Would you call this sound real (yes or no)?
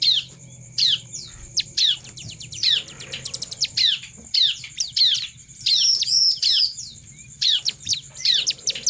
no